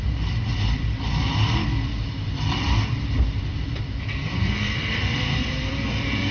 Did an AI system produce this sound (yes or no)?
yes